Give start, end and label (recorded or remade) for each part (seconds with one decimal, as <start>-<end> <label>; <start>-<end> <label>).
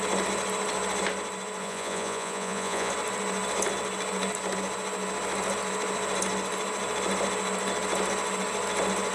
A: 0.0-1.6 recorded; 1.6-2.9 remade; 2.9-9.1 recorded